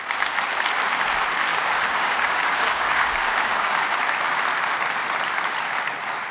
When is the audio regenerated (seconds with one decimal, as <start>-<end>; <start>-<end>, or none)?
1.5-4.0